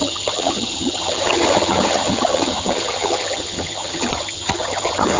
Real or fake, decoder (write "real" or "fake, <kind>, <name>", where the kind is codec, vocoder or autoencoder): fake, vocoder, HiFi-GAN